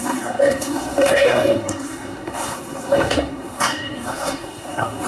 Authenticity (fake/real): fake